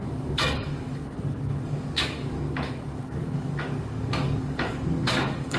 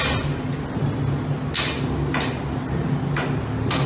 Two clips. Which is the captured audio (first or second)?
second